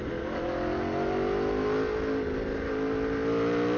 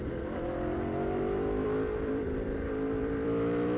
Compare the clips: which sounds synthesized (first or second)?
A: second